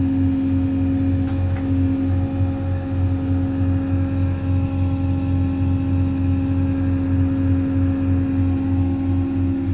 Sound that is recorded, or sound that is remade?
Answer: recorded